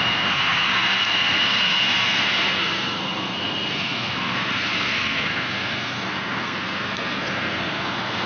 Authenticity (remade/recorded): remade